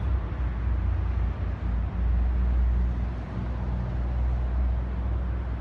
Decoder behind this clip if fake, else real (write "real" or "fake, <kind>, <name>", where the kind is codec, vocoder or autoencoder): real